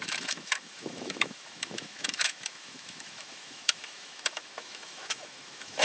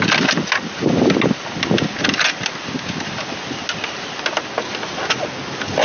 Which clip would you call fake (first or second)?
first